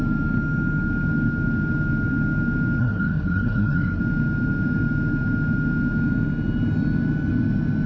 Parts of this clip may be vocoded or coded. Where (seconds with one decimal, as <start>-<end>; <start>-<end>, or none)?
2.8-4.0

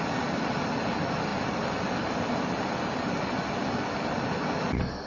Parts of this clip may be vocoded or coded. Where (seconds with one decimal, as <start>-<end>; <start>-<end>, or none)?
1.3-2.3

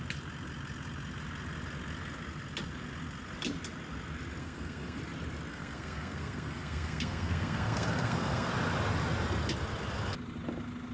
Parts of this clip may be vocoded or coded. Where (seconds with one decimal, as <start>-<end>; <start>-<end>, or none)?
4.4-5.0; 5.5-8.5

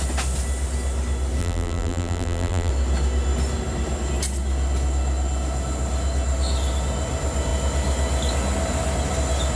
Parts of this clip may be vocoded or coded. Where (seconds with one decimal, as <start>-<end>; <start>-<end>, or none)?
1.4-2.7

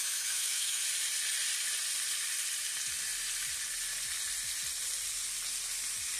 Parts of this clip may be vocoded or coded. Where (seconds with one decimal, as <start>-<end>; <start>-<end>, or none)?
0.0-0.8